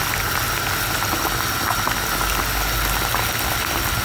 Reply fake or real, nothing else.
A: real